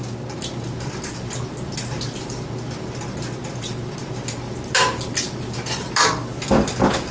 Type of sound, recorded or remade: recorded